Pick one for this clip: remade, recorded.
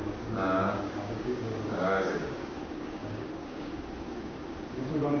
remade